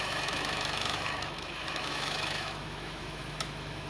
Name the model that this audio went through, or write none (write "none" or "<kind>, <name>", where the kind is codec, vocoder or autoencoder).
autoencoder, DAC-VAE